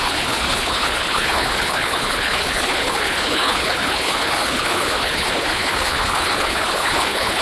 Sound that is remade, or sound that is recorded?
remade